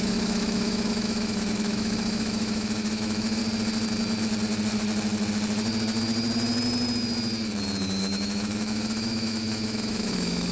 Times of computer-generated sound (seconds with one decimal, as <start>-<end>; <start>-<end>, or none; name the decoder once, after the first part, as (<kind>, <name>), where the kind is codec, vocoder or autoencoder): 0.0-3.4 (autoencoder, DAC-VAE); 8.0-10.5